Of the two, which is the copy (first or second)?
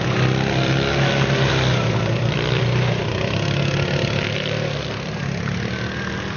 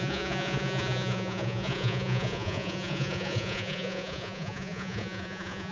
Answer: second